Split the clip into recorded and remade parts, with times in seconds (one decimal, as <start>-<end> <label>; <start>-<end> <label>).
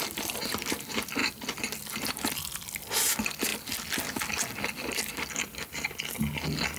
0.0-1.2 recorded; 1.2-1.9 remade; 1.9-6.8 recorded